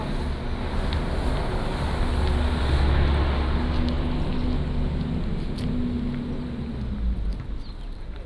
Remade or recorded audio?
recorded